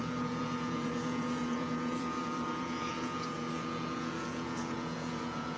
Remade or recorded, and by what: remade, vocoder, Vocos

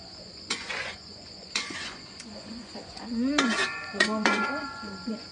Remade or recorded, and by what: remade, vocoder, Vocos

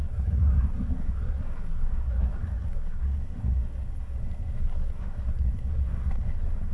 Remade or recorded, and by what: remade, codec, SNAC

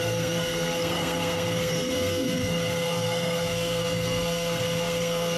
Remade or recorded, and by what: remade, codec, SNAC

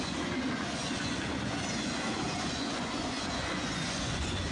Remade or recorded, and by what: remade, vocoder, Vocos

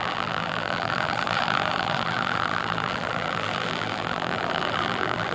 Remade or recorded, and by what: remade, vocoder, BigVGAN v2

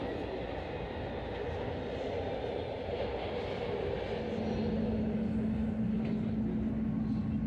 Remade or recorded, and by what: recorded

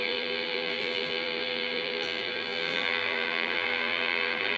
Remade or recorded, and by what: remade, vocoder, BigVGAN v2